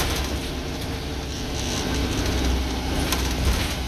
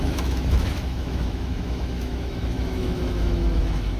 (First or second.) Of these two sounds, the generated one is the second